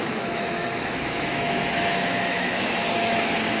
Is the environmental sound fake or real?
fake